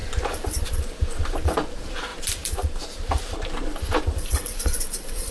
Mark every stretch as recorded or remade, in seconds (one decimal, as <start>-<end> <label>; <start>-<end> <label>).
0.0-5.3 remade